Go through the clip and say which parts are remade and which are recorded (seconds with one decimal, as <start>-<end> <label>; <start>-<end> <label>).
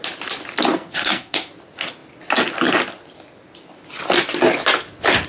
0.0-0.7 recorded; 0.7-1.5 remade; 1.5-5.3 recorded